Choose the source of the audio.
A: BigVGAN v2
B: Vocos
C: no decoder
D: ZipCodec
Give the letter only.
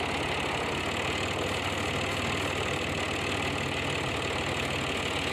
C